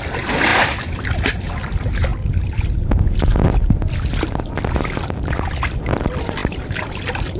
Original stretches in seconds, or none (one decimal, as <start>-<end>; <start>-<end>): 0.0-7.4